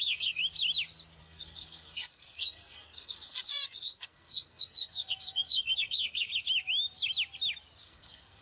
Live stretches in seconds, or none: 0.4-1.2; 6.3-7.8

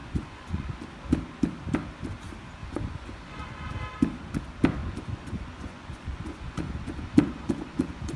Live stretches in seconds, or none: 0.8-2.6; 3.7-4.8

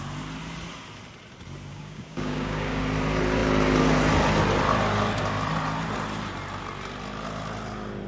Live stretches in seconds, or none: 0.0-1.7; 2.8-8.1

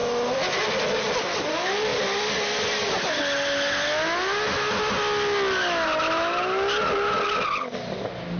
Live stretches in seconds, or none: 0.0-8.4

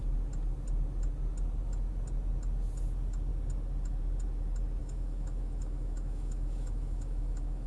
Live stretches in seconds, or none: 0.0-4.8

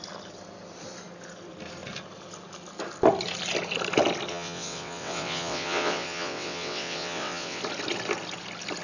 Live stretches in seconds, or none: 0.0-4.3; 7.6-8.8